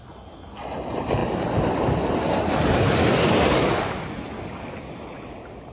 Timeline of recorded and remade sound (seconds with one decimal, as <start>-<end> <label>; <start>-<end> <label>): 0.0-5.7 recorded